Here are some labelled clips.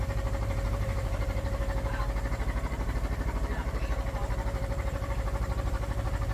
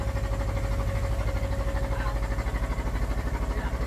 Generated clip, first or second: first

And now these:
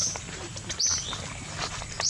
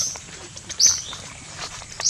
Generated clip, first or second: second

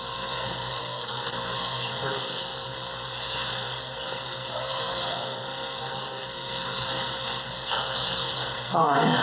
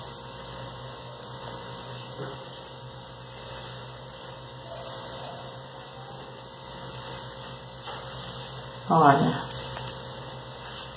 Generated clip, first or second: first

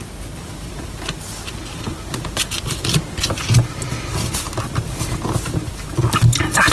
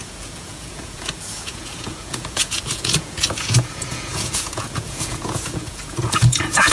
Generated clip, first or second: second